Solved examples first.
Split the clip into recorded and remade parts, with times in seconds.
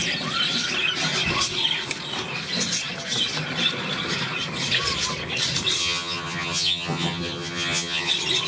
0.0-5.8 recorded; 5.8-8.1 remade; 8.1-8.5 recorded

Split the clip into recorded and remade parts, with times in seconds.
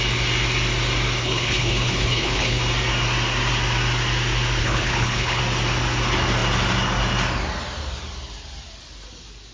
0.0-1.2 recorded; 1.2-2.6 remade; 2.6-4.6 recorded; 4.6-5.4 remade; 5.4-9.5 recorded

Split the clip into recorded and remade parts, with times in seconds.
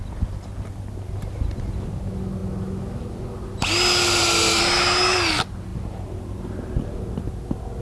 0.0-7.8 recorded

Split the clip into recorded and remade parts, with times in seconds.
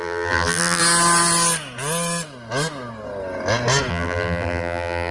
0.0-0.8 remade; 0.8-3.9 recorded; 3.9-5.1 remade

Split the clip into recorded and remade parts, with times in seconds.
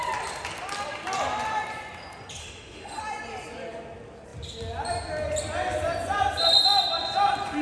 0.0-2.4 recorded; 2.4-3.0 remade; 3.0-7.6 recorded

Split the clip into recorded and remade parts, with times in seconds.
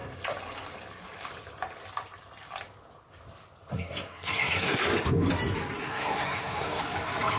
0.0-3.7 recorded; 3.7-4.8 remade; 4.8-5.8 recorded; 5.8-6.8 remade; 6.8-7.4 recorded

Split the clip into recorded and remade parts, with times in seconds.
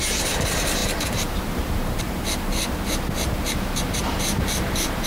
0.0-5.1 remade